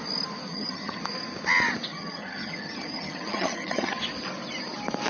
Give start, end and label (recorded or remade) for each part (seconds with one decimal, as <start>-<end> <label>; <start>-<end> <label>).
0.0-0.5 recorded; 0.5-1.0 remade; 1.0-1.9 recorded; 1.9-4.0 remade; 4.0-5.1 recorded